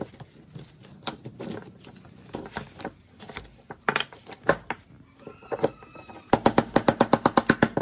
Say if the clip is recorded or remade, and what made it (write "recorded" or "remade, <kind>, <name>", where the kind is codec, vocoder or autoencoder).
recorded